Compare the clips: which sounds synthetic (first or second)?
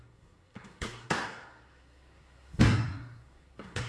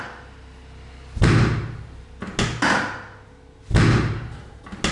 first